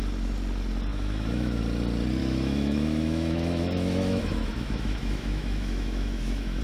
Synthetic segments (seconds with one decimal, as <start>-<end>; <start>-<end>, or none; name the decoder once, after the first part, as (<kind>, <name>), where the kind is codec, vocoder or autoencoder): 0.9-1.6 (autoencoder, DAC-VAE); 2.2-6.6